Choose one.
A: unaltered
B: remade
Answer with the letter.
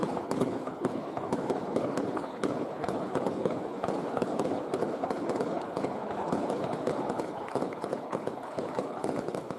B